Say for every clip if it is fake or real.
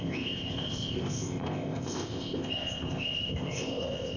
fake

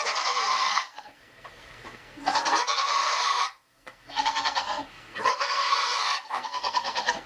fake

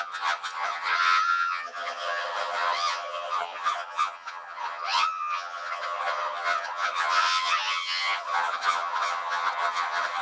fake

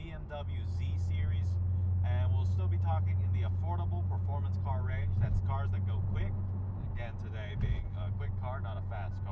real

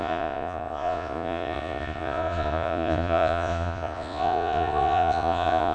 fake